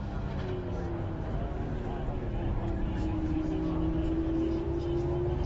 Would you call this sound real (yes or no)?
yes